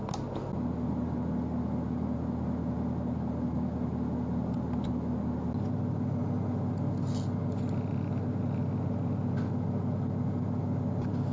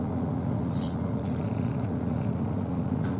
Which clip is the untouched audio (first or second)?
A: first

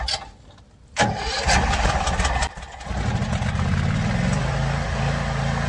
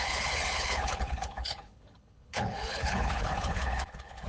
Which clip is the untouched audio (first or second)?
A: first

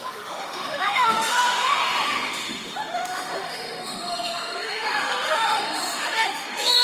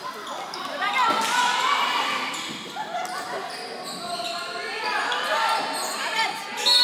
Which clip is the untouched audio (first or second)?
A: second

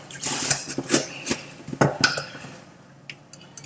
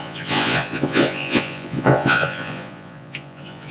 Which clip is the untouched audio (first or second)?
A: first